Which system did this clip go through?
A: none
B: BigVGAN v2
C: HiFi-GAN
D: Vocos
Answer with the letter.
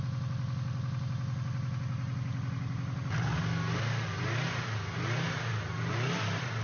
A